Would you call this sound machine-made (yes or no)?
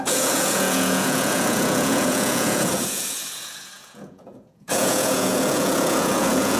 yes